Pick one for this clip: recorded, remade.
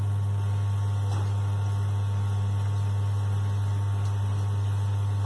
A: recorded